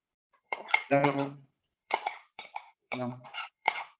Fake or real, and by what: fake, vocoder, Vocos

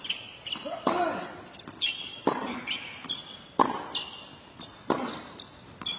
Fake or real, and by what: fake, vocoder, BigVGAN v2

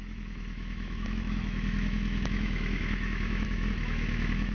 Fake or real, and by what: fake, autoencoder, DAC-VAE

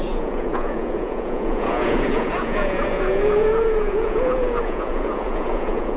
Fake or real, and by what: fake, vocoder, Vocos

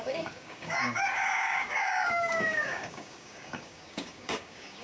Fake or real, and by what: fake, codec, DAC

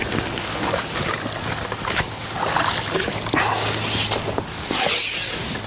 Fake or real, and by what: real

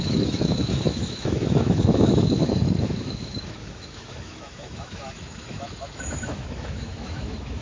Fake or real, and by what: fake, autoencoder, DAC-VAE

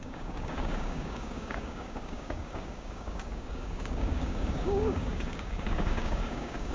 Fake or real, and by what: fake, codec, DAC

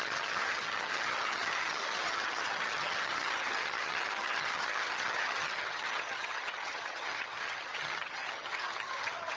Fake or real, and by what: fake, vocoder, HiFi-GAN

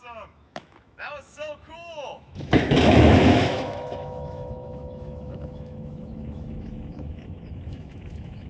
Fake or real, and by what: fake, autoencoder, DAC-VAE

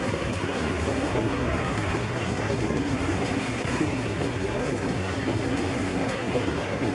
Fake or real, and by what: fake, codec, SNAC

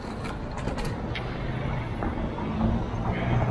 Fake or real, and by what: real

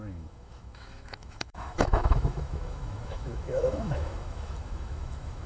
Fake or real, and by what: fake, autoencoder, DAC-VAE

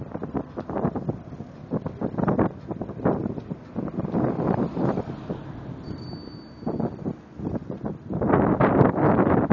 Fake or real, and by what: real